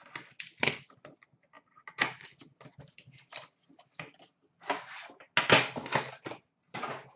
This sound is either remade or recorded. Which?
recorded